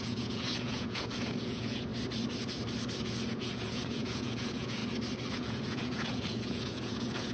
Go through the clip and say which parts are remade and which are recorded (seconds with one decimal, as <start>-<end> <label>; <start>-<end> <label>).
0.0-1.9 remade; 1.9-3.0 recorded; 3.0-4.8 remade; 4.8-5.3 recorded; 5.3-7.3 remade